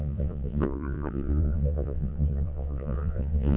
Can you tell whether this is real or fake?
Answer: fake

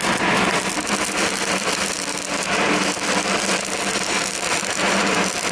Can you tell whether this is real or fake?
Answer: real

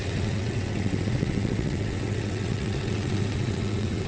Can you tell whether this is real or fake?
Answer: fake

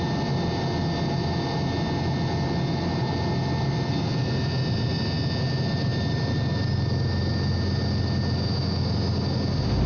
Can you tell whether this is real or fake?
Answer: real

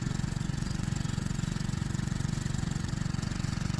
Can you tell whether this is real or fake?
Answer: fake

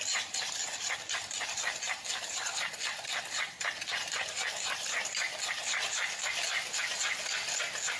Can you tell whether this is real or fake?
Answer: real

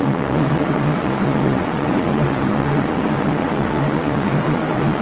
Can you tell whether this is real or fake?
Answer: fake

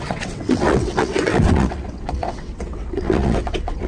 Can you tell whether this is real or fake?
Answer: fake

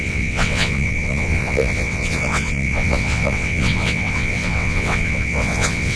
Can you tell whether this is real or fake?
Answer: fake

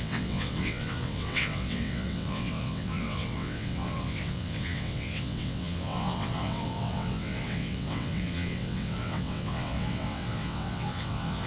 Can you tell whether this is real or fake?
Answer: fake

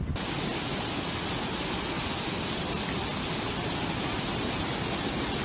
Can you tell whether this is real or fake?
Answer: real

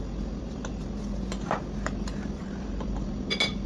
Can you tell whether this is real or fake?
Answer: real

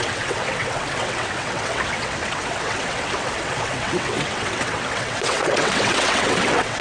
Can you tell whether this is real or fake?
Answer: fake